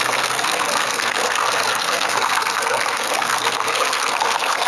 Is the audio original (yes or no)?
no